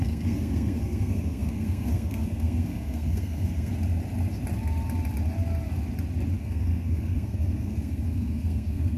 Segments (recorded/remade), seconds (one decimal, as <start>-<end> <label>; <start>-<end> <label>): 0.0-3.7 remade; 3.7-6.4 recorded; 6.4-9.0 remade